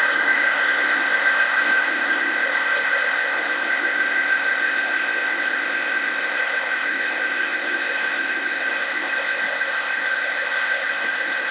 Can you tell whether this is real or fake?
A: fake